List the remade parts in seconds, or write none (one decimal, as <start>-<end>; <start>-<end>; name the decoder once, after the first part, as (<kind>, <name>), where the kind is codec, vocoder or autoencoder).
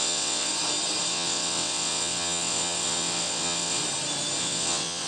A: 0.0-0.5 (vocoder, WaveNeXt); 1.1-3.8; 4.4-5.1